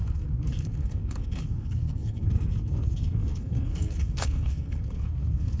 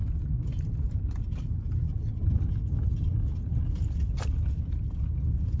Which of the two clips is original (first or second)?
second